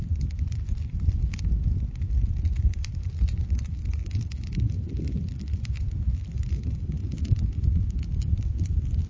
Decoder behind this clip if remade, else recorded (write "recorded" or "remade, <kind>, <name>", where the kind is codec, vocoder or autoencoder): recorded